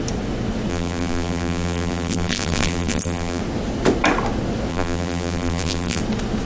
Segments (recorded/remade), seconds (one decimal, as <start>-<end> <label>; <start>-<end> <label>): 0.0-0.7 recorded; 0.7-3.4 remade; 3.4-4.7 recorded; 4.7-6.0 remade; 6.0-6.4 recorded